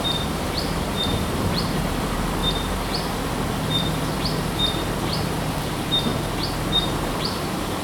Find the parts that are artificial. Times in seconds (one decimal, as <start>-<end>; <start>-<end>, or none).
0.0-2.4; 5.5-6.1; 6.8-7.8

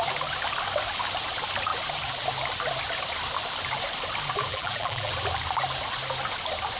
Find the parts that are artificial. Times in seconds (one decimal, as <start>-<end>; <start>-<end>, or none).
4.5-5.1

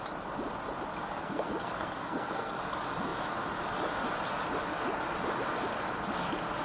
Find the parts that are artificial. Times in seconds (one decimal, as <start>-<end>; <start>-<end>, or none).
1.2-2.6

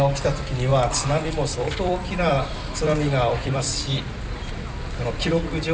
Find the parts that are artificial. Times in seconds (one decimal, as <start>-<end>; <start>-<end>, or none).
0.7-4.0

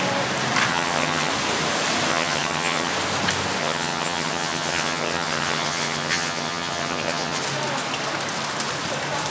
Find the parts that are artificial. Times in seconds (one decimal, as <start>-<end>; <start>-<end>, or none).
0.7-1.3; 2.1-2.9; 3.6-7.4

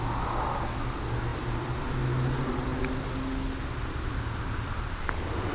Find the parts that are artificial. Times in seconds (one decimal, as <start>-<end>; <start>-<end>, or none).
1.3-2.0

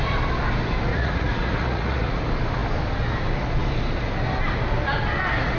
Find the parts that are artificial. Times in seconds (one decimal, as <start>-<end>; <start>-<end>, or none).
0.9-2.2